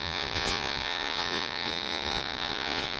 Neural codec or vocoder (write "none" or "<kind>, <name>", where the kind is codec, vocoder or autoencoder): vocoder, Vocos